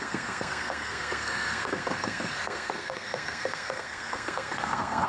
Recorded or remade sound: remade